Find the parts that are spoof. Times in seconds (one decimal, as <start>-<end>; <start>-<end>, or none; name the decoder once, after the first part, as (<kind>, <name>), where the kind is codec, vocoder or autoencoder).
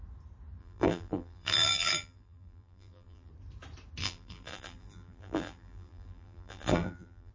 0.6-3.3 (vocoder, BigVGAN v2); 4.0-7.3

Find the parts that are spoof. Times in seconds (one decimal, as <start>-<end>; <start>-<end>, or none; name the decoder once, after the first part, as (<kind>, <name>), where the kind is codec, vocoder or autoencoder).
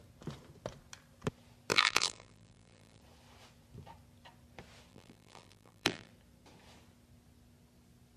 1.7-3.0 (vocoder, BigVGAN v2); 4.9-6.1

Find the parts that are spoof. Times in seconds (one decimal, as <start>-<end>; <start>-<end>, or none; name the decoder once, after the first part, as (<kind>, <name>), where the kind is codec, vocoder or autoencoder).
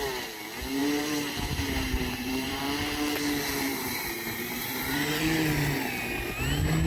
0.8-2.6 (vocoder, BigVGAN v2); 3.7-5.2